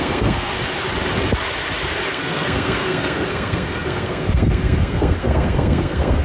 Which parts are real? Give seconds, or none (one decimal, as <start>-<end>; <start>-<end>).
0.5-2.1